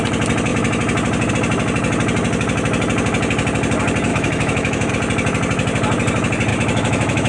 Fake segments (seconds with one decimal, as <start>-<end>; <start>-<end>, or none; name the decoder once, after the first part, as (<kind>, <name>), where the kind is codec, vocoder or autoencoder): 4.1-4.9 (autoencoder, DAC-VAE); 6.5-7.3